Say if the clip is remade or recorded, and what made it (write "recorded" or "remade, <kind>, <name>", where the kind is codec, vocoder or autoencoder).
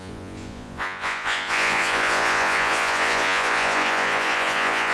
remade, vocoder, Vocos